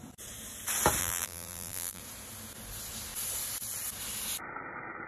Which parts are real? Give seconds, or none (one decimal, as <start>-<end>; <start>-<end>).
0.0-1.0; 2.0-5.1